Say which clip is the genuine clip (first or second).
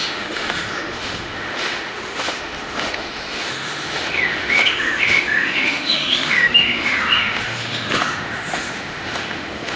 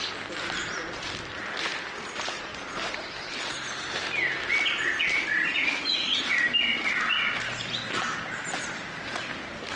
second